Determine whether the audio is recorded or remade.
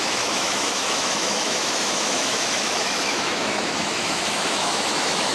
remade